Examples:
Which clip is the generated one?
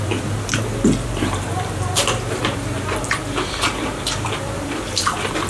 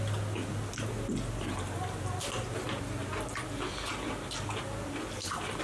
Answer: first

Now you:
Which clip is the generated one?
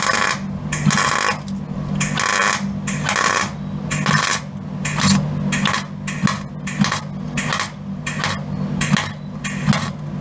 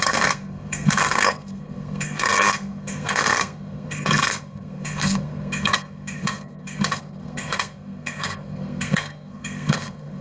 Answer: second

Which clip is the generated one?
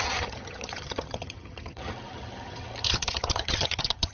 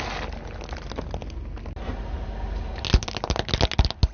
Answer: first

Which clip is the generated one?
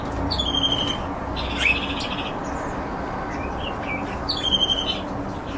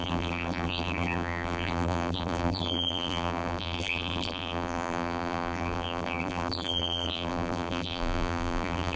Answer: second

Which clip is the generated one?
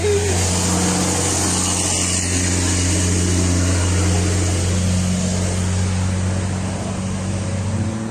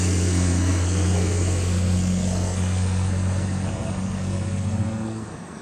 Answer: second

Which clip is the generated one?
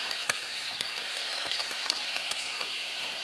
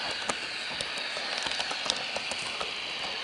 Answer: first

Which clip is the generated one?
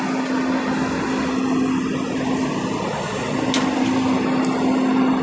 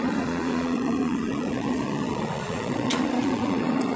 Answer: second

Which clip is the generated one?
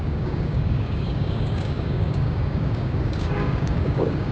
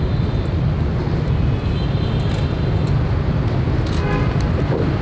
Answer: first